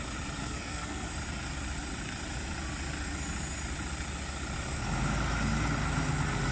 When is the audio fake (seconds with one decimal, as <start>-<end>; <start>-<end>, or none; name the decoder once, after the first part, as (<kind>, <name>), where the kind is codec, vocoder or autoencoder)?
0.4-1.1 (codec, SNAC)